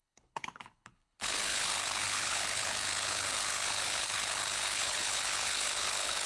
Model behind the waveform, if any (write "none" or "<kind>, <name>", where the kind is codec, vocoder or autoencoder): codec, HILCodec